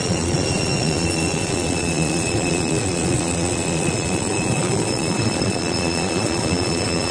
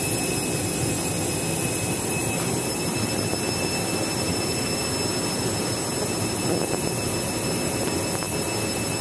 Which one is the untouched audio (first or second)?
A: second